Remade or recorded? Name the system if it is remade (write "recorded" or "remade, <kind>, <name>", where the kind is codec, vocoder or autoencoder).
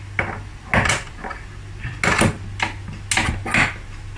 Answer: recorded